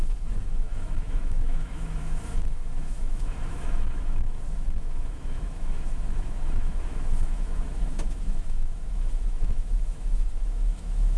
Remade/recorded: remade